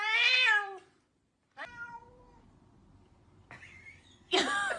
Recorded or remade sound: remade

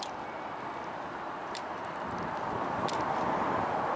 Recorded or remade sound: recorded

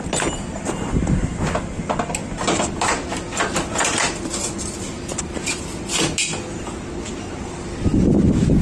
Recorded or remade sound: recorded